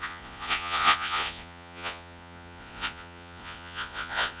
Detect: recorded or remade remade